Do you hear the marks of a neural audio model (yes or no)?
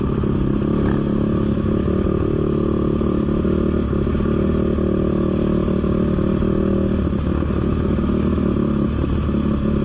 no